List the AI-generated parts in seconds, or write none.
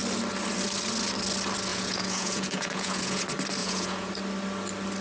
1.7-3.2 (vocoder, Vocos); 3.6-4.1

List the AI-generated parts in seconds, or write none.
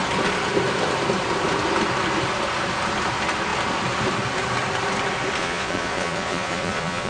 5.4-7.1 (vocoder, Vocos)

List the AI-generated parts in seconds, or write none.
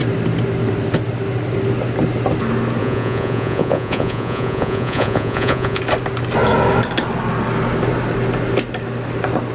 2.8-5.8 (vocoder, Vocos)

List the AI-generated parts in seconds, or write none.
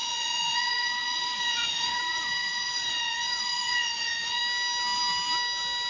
0.0-4.4 (vocoder, Vocos)